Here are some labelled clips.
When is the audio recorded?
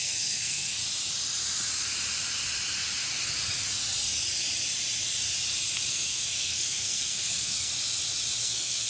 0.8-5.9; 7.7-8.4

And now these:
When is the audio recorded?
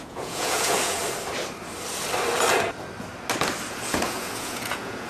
1.0-3.7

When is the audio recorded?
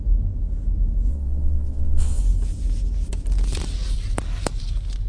0.0-1.1; 2.2-5.1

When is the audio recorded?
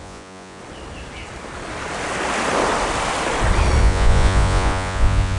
0.6-3.8